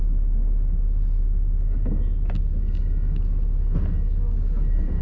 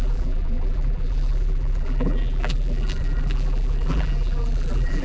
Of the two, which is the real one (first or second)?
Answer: first